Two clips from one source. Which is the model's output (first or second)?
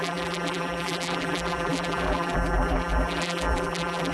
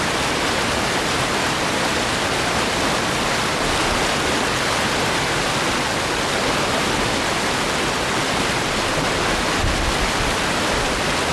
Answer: first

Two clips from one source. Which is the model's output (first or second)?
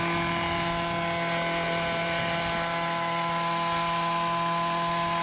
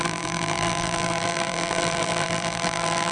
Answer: second